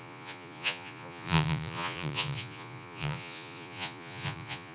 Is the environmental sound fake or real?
fake